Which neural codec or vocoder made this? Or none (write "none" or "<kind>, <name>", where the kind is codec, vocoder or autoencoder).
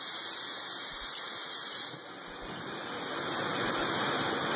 none